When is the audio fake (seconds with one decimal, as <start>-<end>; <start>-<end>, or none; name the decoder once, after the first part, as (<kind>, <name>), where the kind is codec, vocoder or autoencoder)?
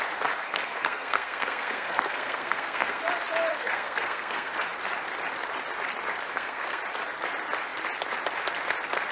0.4-3.0 (codec, SNAC); 3.5-4.5; 6.3-6.8